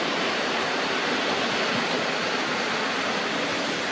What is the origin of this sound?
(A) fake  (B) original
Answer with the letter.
B